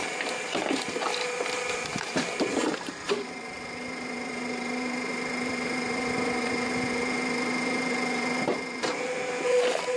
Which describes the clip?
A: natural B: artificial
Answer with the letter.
B